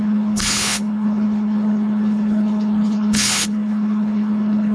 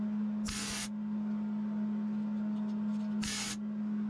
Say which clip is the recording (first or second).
second